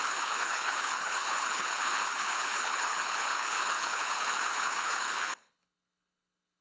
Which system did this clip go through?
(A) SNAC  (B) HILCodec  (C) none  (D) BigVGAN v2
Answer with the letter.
B